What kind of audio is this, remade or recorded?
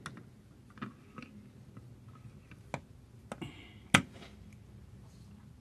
recorded